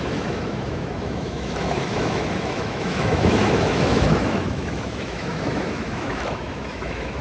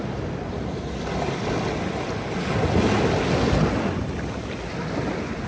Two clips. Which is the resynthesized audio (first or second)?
first